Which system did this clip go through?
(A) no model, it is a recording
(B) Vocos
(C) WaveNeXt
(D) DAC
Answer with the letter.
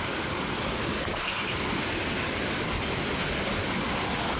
A